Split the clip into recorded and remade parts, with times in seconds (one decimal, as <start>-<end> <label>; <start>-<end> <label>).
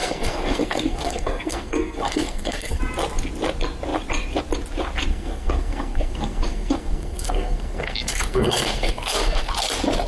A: 0.0-2.8 remade; 2.8-5.1 recorded; 5.1-9.5 remade; 9.5-10.1 recorded